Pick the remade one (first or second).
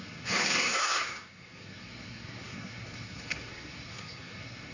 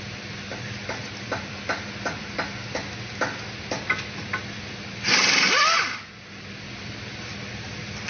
first